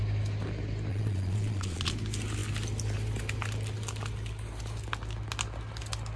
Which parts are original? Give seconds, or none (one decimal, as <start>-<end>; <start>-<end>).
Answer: 0.0-0.9; 1.9-6.2